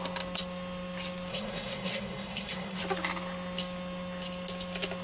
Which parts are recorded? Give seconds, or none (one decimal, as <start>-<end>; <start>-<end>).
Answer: 0.0-1.3; 2.8-5.0